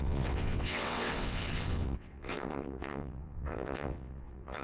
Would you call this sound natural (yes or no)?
no